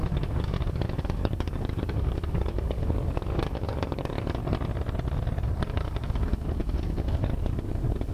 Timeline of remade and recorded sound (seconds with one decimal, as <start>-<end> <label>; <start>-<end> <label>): 0.0-4.4 remade; 4.4-5.7 recorded; 5.7-8.1 remade